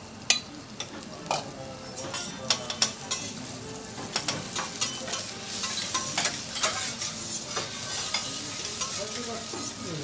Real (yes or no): yes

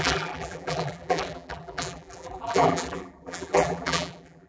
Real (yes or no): no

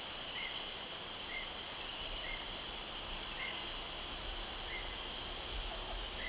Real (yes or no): yes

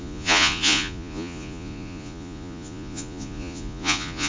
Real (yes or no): no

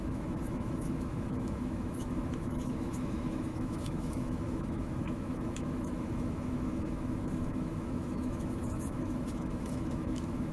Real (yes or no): no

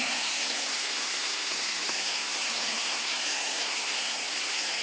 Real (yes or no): no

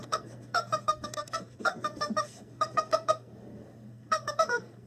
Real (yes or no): no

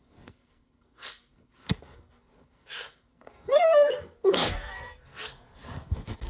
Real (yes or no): no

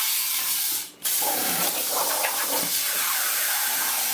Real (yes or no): no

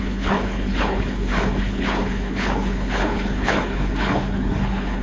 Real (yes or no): no